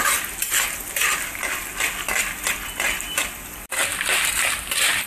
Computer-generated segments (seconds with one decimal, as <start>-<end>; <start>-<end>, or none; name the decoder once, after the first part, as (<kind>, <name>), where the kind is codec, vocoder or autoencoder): none